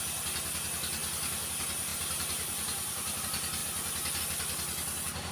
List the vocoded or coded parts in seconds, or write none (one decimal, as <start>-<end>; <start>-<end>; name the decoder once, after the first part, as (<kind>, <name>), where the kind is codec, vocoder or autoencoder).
1.9-3.2 (vocoder, BigVGAN v2)